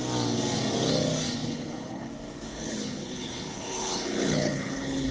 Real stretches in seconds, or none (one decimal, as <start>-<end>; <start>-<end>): 0.0-1.4; 2.1-2.5